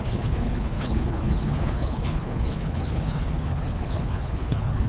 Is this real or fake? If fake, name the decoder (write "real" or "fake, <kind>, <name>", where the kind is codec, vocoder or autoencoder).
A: fake, codec, HILCodec